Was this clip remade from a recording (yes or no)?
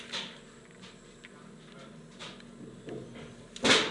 no